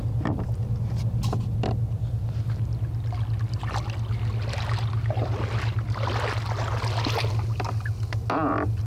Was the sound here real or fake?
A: real